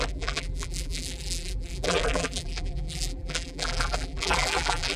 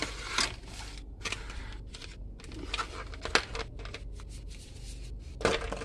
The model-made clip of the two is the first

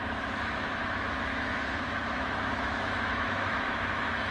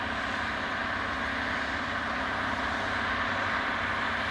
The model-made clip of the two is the first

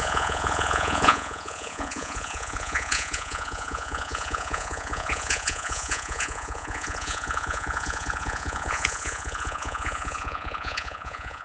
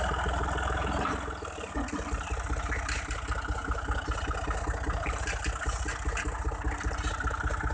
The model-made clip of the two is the first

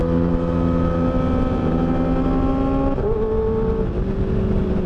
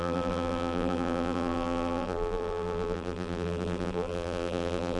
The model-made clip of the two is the second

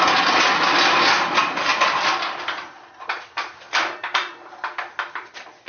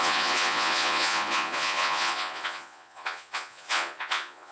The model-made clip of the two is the second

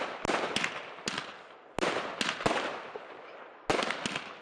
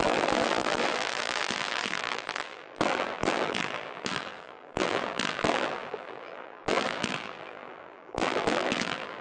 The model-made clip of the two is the second